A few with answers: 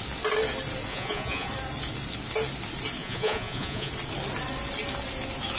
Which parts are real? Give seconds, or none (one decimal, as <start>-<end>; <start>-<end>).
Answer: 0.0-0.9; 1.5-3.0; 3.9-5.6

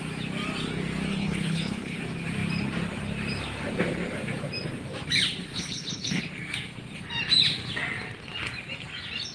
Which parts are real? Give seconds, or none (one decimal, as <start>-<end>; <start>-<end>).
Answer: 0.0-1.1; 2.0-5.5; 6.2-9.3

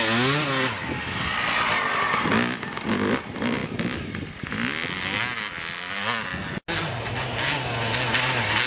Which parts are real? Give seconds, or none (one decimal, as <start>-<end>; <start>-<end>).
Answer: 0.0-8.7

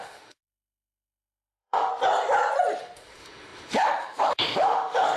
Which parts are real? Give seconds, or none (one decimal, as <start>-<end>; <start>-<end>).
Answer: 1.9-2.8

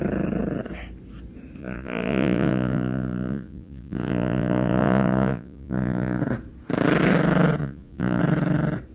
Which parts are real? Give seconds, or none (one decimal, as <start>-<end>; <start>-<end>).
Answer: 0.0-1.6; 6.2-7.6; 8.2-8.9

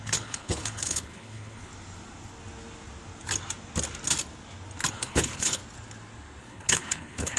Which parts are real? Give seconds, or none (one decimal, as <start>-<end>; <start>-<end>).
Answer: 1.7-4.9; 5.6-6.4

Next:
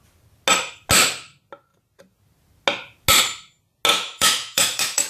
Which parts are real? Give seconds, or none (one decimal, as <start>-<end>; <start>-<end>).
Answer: 0.0-3.9

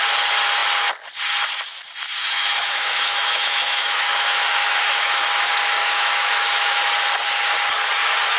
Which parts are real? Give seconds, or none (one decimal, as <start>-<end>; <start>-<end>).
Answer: 0.0-2.2; 5.2-5.8; 6.8-8.4